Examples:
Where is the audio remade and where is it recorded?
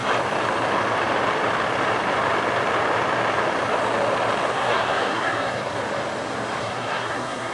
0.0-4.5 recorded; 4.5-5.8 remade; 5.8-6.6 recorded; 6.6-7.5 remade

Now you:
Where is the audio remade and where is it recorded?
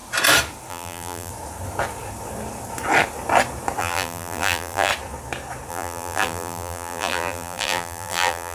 0.0-0.7 recorded; 0.7-1.3 remade; 1.3-3.8 recorded; 3.8-4.9 remade; 4.9-5.7 recorded; 5.7-8.5 remade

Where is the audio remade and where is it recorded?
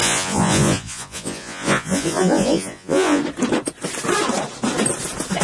0.0-3.2 remade; 3.2-5.4 recorded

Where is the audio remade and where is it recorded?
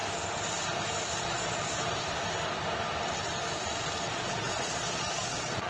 0.0-1.1 recorded; 1.1-1.6 remade; 1.6-4.1 recorded; 4.1-5.7 remade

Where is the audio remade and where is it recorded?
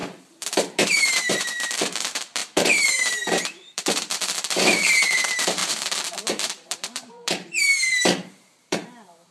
0.0-9.3 remade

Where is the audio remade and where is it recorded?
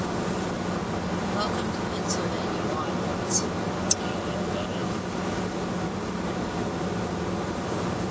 0.0-8.1 recorded